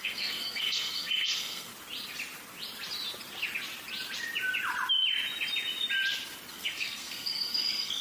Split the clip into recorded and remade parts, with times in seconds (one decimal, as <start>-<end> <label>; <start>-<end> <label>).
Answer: 0.0-1.7 remade; 1.7-6.5 recorded; 6.5-8.0 remade